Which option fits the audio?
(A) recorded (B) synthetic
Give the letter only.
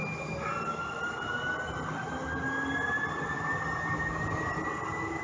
A